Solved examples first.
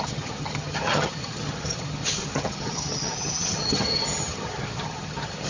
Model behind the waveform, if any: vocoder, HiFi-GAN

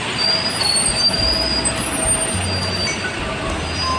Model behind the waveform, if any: none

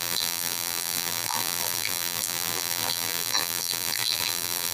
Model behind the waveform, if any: vocoder, BigVGAN v2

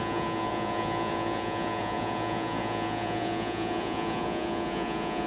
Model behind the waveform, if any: vocoder, Vocos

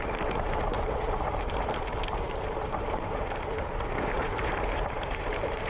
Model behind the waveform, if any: vocoder, BigVGAN v2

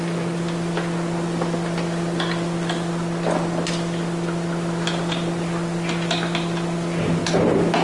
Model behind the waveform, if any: none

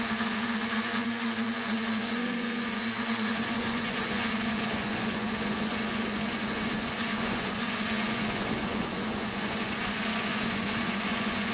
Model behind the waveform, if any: vocoder, Vocos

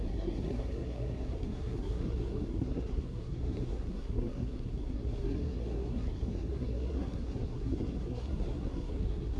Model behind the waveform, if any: codec, SNAC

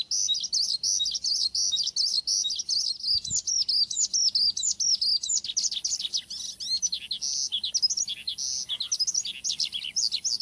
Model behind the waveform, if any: none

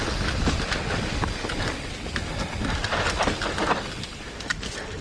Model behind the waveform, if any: none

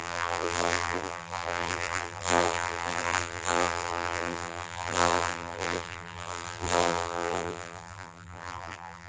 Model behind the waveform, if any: vocoder, BigVGAN v2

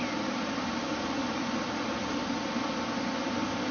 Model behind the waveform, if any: none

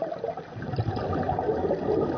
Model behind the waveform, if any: none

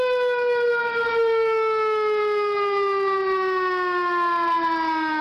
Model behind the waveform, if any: none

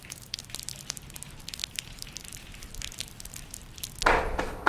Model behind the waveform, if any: none